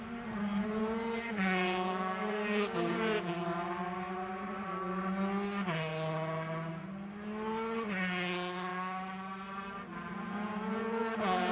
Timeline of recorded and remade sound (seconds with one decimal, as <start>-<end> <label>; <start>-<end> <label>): 0.0-0.5 recorded; 0.5-3.3 remade; 3.3-9.9 recorded; 9.9-11.5 remade